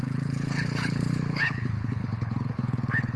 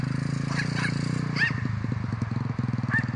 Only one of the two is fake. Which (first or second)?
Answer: first